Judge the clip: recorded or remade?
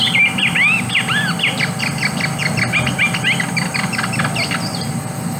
recorded